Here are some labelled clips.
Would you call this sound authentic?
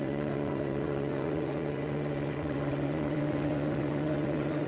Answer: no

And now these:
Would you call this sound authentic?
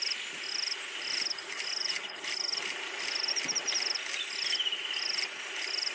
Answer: yes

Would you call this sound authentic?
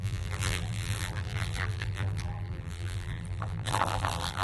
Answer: no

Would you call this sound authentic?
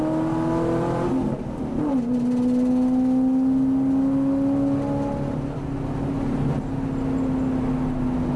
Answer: yes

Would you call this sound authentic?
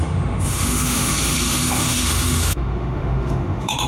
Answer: no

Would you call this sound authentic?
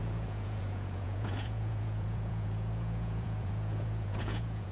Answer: no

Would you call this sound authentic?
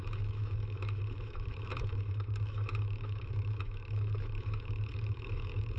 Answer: no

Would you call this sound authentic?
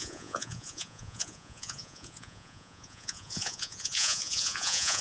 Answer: no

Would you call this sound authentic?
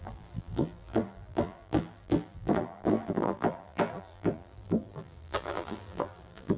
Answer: no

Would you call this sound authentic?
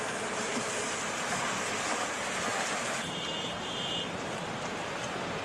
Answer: no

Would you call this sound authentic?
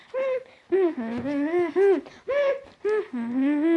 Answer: yes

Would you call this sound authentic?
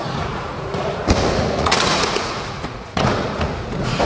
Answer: no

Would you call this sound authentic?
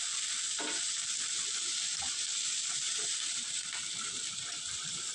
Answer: no